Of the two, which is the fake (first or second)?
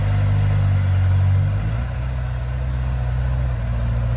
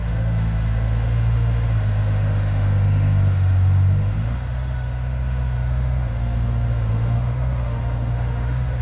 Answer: second